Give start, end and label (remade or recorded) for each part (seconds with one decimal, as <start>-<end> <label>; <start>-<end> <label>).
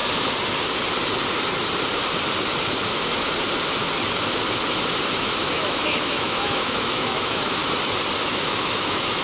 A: 0.0-5.2 recorded; 5.2-7.6 remade; 7.6-8.2 recorded; 8.2-9.2 remade